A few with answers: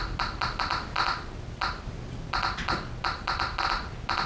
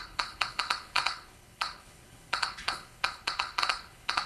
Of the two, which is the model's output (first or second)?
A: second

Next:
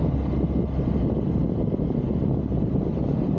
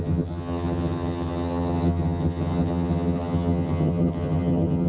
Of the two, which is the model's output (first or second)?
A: second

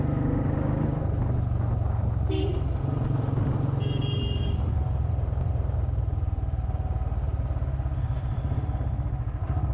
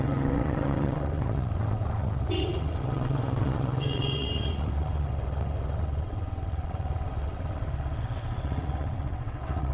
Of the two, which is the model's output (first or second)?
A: second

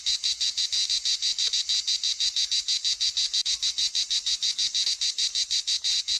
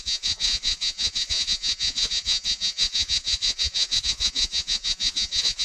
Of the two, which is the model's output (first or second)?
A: second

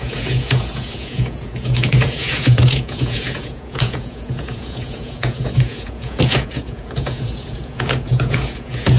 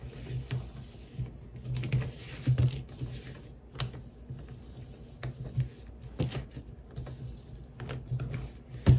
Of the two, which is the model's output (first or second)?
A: first